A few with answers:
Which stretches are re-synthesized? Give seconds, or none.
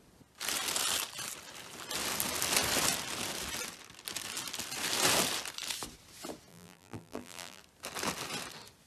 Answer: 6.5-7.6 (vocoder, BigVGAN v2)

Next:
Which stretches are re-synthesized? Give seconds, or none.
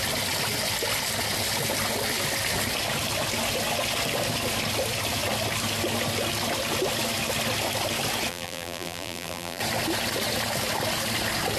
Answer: 8.3-9.6 (vocoder, BigVGAN v2)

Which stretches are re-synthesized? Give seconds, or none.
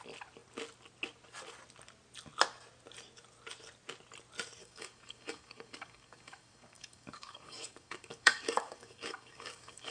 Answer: 4.6-9.9 (codec, DAC)